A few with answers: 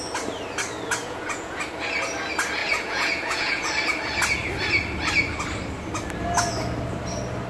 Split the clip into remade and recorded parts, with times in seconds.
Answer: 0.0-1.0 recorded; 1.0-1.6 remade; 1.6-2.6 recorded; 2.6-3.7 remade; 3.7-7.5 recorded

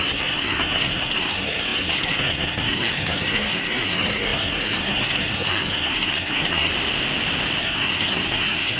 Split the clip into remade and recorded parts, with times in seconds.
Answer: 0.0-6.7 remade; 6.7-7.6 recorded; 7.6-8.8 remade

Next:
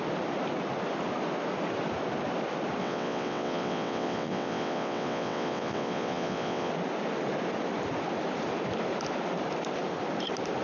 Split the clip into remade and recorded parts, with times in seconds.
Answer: 0.0-2.8 recorded; 2.8-6.7 remade; 6.7-10.6 recorded